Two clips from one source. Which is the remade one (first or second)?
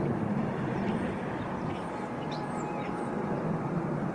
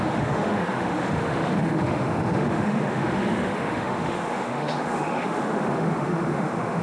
second